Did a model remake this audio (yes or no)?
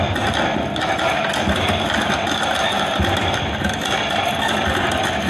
no